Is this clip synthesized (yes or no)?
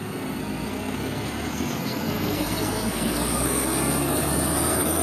yes